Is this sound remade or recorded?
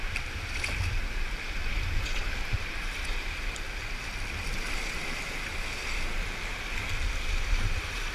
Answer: recorded